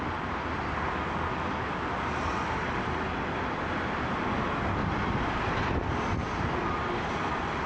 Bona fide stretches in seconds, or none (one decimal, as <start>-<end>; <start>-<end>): 0.0-4.8; 6.4-7.7